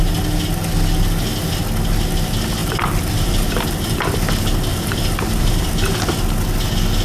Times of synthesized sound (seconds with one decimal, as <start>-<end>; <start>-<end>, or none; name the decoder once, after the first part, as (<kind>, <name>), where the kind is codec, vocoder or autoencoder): 2.6-4.0 (vocoder, BigVGAN v2); 4.7-5.7